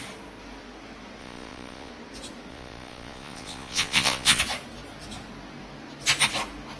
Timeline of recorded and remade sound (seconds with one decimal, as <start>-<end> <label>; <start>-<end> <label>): 0.0-1.2 recorded; 1.2-1.9 remade; 1.9-2.5 recorded; 2.5-4.4 remade; 4.4-6.8 recorded